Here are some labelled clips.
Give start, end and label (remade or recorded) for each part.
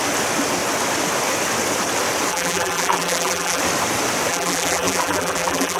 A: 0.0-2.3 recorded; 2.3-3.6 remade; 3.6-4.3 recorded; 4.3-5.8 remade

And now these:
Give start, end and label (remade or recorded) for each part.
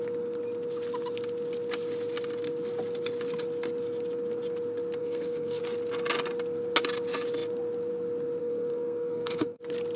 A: 0.0-5.0 recorded; 5.0-5.6 remade; 5.6-8.4 recorded; 8.4-9.6 remade; 9.6-10.0 recorded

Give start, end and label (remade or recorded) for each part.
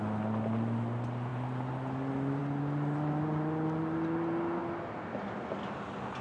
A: 0.0-6.2 recorded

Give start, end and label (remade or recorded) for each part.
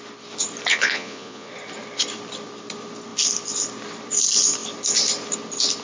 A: 0.0-0.7 recorded; 0.7-1.5 remade; 1.5-5.8 recorded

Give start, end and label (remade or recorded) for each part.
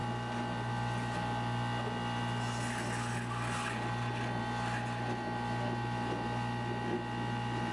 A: 0.0-7.7 recorded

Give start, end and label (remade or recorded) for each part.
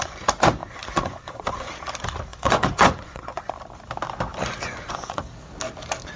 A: 0.0-0.6 recorded; 0.6-1.7 remade; 1.7-2.3 recorded; 2.3-3.5 remade; 3.5-4.4 recorded; 4.4-5.2 remade; 5.2-6.2 recorded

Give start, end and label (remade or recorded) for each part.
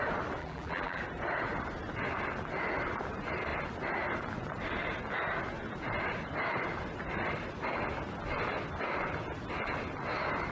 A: 0.0-0.4 recorded; 0.4-1.0 remade; 1.0-10.5 recorded